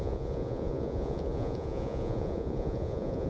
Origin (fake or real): fake